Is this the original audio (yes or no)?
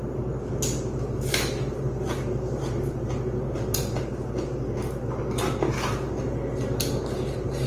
yes